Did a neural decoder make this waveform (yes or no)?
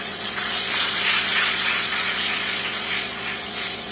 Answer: yes